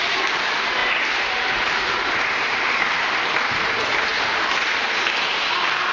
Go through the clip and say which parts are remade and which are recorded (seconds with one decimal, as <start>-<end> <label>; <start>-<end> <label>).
0.0-0.8 recorded; 0.8-3.0 remade; 3.0-5.9 recorded